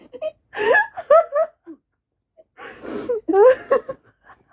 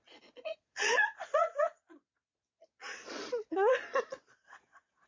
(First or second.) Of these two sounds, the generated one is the second